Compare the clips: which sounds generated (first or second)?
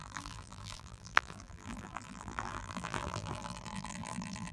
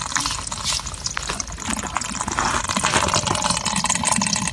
first